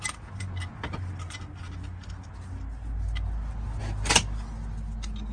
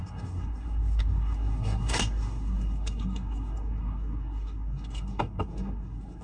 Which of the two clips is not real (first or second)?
second